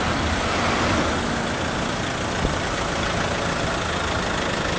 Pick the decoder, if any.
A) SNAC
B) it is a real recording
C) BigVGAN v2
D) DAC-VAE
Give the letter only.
B